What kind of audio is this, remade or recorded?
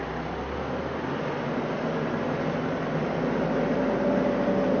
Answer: recorded